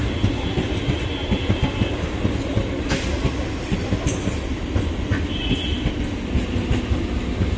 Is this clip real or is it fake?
real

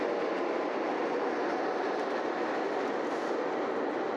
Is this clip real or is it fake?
real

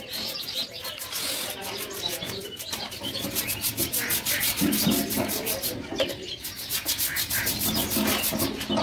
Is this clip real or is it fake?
real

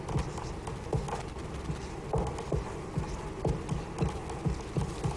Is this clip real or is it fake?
real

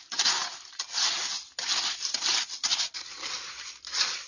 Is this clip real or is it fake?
real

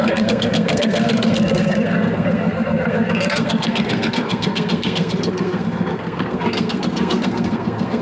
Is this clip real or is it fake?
fake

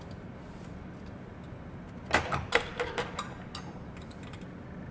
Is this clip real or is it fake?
real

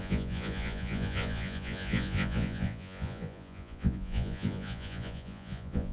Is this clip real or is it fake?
fake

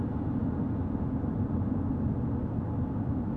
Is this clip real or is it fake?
real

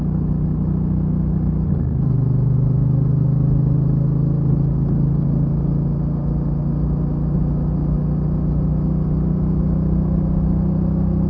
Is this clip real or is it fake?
real